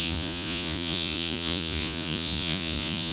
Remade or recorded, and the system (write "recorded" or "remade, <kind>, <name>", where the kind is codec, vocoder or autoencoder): remade, vocoder, Vocos